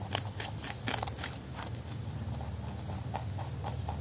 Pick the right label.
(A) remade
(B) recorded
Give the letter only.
B